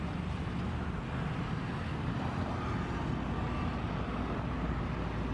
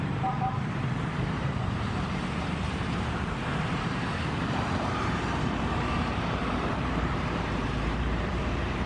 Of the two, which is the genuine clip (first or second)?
first